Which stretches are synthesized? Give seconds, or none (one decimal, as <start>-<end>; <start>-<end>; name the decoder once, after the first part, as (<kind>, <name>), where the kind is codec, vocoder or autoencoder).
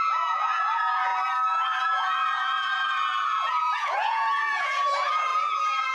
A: 0.0-1.1 (vocoder, Vocos); 1.8-5.9